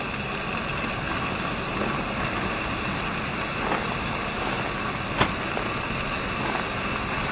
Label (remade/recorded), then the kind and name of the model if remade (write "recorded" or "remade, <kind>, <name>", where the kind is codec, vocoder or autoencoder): recorded